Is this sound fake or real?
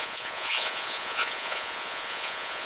fake